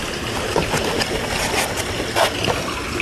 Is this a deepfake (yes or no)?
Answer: no